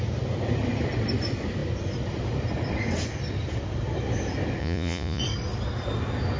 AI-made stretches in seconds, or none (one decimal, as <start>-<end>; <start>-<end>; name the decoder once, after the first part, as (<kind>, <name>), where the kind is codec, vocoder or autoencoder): 4.6-5.2 (vocoder, Vocos)